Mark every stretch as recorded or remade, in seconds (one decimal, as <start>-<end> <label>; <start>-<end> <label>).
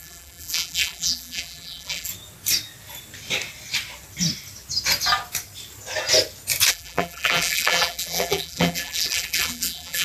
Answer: 0.0-2.1 remade; 2.1-6.7 recorded; 6.7-10.0 remade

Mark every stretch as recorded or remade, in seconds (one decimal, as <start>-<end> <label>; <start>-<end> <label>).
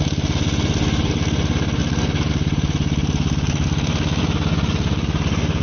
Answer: 0.0-5.6 recorded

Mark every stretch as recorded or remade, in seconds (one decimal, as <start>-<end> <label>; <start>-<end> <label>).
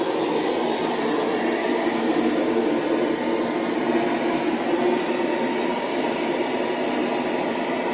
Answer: 0.0-1.6 recorded; 1.6-2.7 remade; 2.7-5.7 recorded; 5.7-6.3 remade; 6.3-7.9 recorded